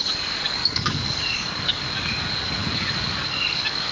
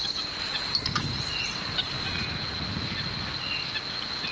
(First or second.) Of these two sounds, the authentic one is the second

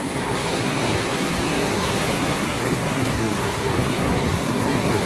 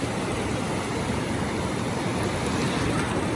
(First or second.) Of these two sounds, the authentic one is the second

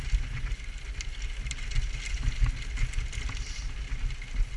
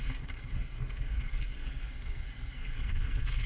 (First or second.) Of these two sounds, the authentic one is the first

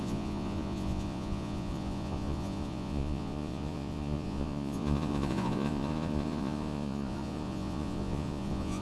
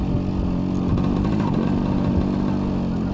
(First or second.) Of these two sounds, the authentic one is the second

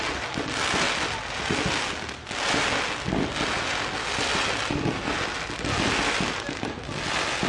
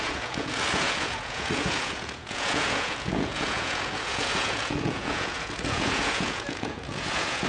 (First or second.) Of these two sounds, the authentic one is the first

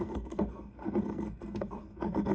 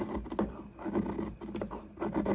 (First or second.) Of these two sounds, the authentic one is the second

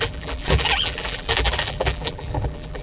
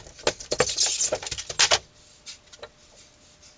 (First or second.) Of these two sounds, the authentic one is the second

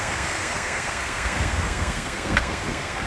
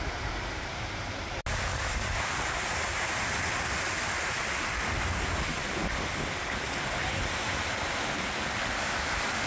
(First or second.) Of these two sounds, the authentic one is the second